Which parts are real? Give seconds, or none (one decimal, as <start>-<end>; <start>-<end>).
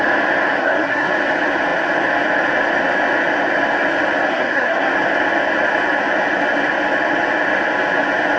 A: 0.0-0.6; 1.1-4.3; 4.9-8.4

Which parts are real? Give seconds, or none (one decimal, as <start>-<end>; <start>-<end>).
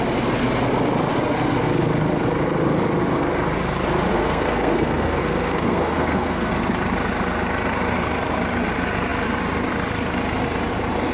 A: 0.0-4.1; 6.5-11.1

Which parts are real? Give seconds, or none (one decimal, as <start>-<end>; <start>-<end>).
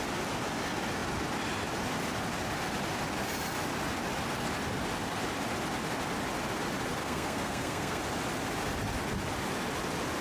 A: 0.0-7.0; 8.0-10.2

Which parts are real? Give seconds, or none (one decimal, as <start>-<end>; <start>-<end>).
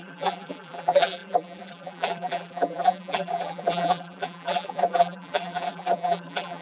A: none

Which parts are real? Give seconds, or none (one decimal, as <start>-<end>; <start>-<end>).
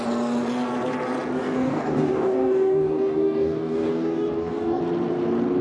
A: 0.0-1.4; 4.8-5.6